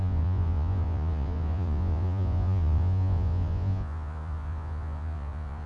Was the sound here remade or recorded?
remade